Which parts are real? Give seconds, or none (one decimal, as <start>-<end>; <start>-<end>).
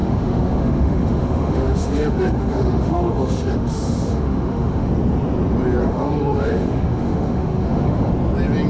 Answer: 4.9-5.8; 8.1-8.7